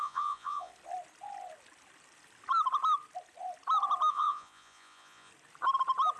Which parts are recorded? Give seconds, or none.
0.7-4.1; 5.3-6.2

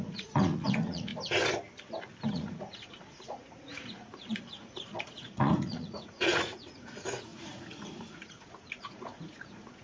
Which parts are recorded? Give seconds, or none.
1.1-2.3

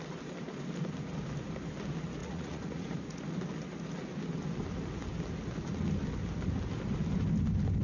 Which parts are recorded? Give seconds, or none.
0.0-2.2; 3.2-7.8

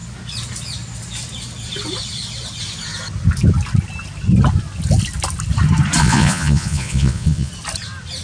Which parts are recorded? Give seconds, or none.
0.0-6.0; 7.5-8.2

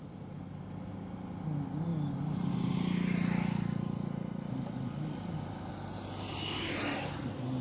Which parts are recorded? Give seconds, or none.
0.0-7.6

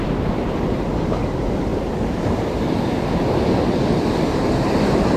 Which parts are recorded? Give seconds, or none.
0.0-5.2

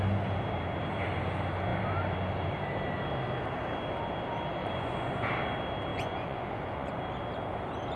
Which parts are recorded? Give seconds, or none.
0.0-4.6; 5.3-5.9; 7.0-8.0